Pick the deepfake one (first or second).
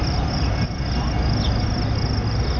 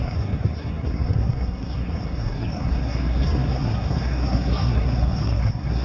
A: second